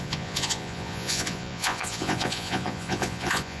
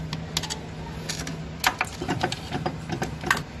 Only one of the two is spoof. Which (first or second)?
first